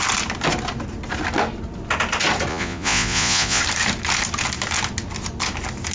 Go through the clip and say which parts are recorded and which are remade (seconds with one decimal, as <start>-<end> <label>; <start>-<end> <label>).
0.0-2.5 recorded; 2.5-3.6 remade; 3.6-5.9 recorded